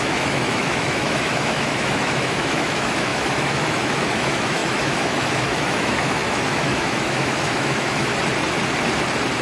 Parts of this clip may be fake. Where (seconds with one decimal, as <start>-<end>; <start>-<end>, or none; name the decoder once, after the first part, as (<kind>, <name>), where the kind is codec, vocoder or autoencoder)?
0.0-8.1 (autoencoder, DAC-VAE)